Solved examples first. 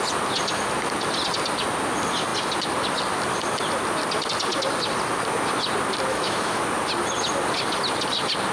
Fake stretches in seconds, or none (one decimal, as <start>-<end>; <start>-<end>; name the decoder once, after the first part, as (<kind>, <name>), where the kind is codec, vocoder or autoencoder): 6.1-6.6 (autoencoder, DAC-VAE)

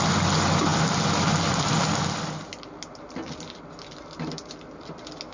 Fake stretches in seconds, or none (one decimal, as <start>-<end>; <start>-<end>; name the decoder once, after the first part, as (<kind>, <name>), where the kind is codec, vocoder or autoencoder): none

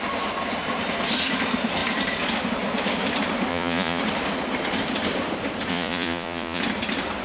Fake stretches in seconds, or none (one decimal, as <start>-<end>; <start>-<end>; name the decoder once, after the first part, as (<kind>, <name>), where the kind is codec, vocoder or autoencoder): 3.5-4.0 (vocoder, Vocos); 5.7-6.6

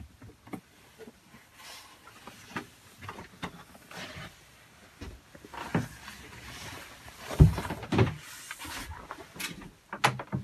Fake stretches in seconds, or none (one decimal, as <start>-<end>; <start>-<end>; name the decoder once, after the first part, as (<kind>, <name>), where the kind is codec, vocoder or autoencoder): none

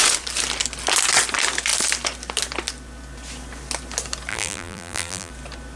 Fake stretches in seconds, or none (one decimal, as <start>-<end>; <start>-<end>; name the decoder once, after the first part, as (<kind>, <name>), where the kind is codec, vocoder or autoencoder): 4.3-5.3 (vocoder, BigVGAN v2)

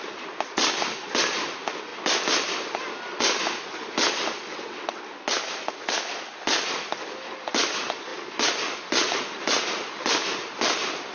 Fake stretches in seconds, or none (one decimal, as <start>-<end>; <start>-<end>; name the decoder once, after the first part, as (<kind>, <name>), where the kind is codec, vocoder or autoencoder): 4.5-5.0 (vocoder, WaveNeXt)

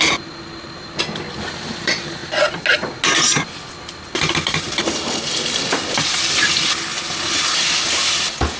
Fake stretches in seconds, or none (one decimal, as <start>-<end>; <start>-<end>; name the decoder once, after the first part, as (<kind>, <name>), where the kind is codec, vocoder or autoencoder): none